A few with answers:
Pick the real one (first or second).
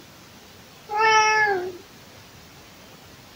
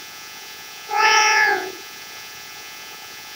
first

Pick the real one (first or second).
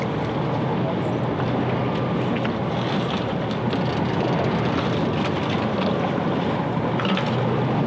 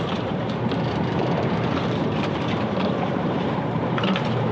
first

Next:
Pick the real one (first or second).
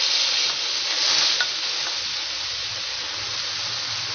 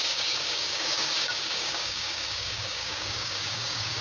first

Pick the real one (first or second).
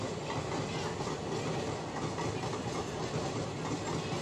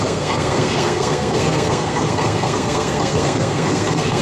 first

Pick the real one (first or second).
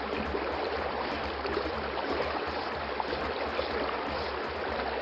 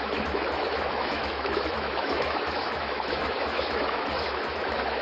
first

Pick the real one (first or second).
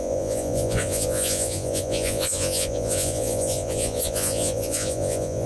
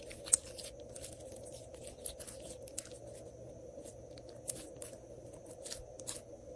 second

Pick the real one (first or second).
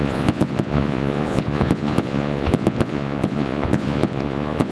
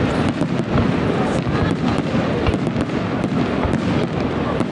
second